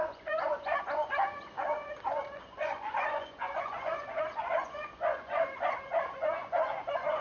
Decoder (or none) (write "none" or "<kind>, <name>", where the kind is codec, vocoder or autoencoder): vocoder, Vocos